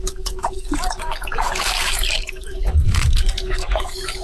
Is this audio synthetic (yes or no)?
yes